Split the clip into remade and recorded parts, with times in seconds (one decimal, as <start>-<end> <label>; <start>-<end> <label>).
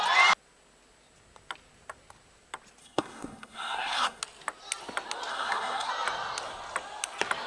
0.0-2.8 recorded; 2.8-4.2 remade; 4.2-5.3 recorded; 5.3-5.9 remade; 5.9-7.5 recorded